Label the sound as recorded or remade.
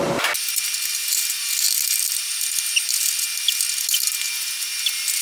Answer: recorded